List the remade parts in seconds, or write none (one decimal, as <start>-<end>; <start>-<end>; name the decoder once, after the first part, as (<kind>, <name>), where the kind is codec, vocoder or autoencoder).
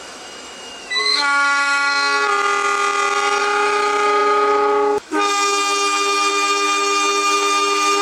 0.0-1.9 (autoencoder, DAC-VAE); 3.4-8.0